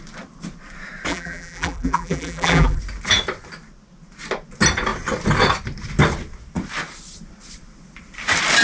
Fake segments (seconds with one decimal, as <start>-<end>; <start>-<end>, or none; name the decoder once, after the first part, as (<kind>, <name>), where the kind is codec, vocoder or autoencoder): 1.1-2.8 (vocoder, BigVGAN v2)